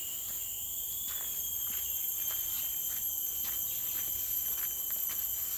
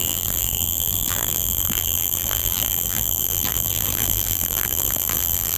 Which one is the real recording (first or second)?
first